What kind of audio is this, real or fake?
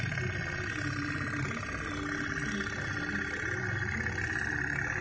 real